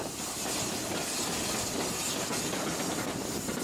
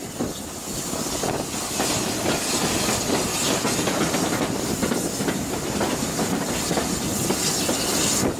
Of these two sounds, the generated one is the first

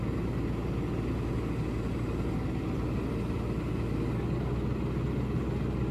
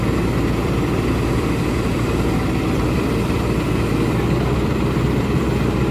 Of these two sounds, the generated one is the second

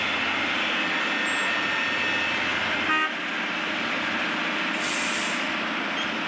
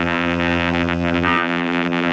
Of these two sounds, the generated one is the second